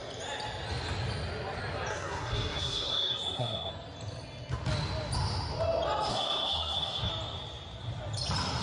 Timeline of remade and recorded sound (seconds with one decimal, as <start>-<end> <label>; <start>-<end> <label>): 0.0-1.9 recorded; 1.9-3.7 remade; 3.7-6.1 recorded; 6.1-7.1 remade; 7.1-8.6 recorded